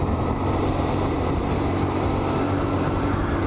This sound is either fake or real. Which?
fake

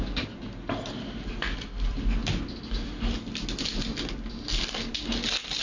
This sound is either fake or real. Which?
real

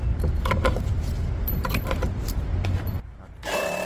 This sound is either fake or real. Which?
fake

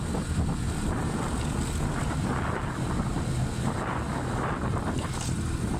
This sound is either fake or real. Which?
real